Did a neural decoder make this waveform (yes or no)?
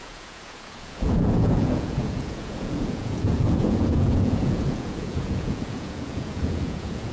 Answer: yes